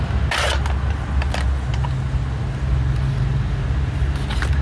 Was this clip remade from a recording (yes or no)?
no